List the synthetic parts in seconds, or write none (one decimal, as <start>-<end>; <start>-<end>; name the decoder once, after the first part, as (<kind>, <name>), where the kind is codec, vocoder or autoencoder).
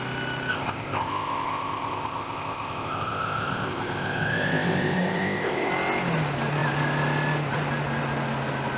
0.5-5.7 (codec, ZipCodec)